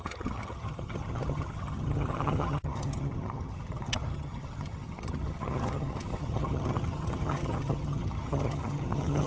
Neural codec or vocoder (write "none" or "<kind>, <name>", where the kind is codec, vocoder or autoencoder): vocoder, HiFi-GAN